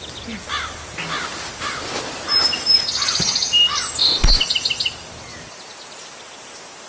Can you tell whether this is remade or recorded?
recorded